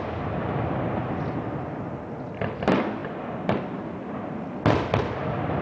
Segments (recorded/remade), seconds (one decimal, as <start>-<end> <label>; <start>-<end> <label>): 0.0-5.6 recorded